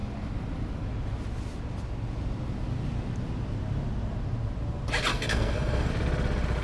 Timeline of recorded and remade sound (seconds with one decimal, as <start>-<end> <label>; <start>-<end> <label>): 0.0-5.1 recorded; 5.1-5.9 remade; 5.9-6.6 recorded